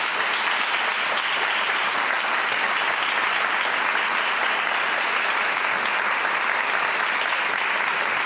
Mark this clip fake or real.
real